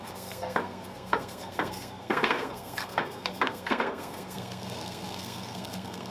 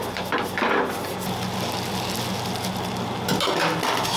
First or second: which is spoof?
first